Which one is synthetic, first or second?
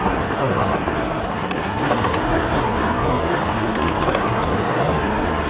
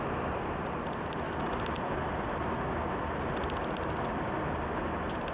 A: first